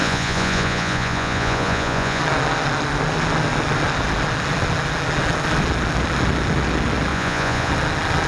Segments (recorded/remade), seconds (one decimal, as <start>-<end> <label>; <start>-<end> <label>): 0.0-2.2 remade; 2.2-7.1 recorded; 7.1-7.7 remade; 7.7-8.3 recorded